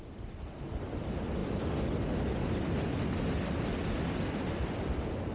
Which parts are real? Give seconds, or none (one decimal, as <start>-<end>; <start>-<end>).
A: 0.0-5.3